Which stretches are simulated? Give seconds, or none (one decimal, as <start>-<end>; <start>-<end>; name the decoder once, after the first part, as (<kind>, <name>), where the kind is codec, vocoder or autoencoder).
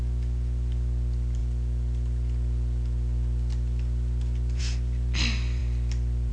none